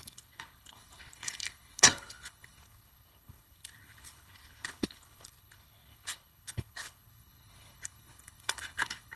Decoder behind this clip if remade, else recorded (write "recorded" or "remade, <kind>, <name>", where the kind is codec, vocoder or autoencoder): remade, codec, HILCodec